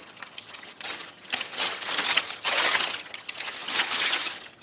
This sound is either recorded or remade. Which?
remade